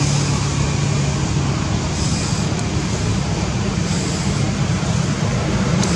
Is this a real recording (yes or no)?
yes